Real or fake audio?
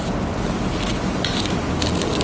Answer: real